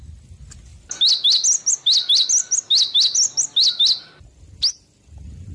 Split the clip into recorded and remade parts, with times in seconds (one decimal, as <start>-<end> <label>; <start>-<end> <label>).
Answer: 0.0-5.5 recorded